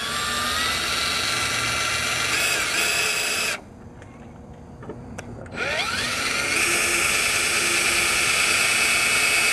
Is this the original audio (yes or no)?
yes